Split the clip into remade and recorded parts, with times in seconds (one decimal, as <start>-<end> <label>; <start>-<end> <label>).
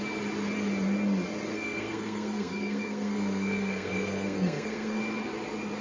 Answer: 0.0-1.5 recorded; 1.5-5.0 remade; 5.0-5.8 recorded